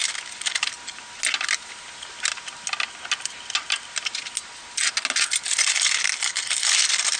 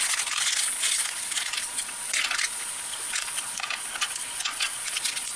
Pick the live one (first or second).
first